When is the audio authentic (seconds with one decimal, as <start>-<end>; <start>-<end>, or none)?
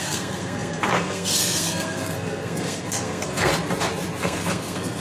3.5-4.2